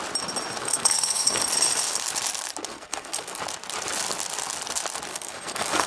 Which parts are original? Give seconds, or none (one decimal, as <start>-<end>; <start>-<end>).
0.0-0.6; 1.4-2.7; 3.4-5.1